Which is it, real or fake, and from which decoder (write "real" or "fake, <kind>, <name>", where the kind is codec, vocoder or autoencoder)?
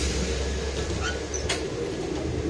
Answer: real